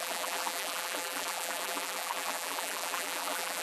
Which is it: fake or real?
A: fake